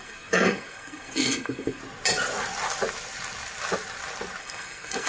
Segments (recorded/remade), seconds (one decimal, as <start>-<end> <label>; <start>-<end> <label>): 0.0-1.8 remade; 1.8-4.4 recorded; 4.4-5.1 remade